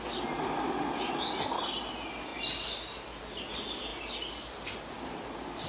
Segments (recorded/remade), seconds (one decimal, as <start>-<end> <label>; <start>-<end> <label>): 0.0-5.7 recorded